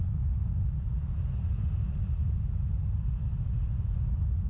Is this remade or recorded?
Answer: recorded